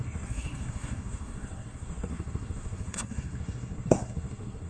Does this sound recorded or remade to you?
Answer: remade